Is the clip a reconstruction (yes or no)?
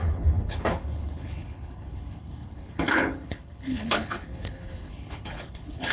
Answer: yes